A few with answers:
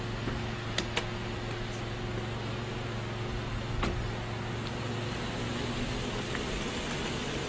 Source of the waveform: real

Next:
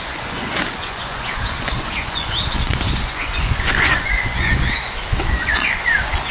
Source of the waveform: fake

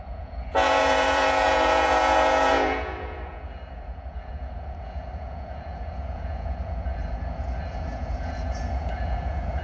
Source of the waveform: fake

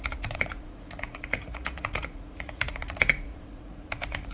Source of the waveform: fake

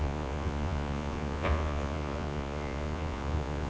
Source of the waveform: fake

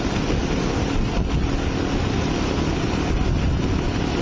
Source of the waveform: real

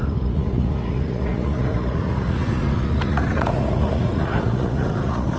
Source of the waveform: fake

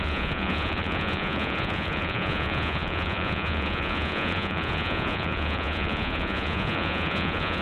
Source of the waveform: fake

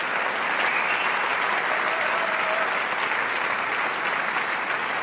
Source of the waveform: real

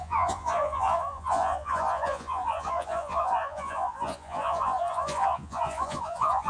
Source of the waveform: fake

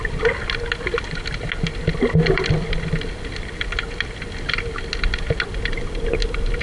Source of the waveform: real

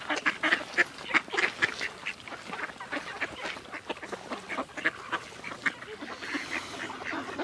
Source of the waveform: real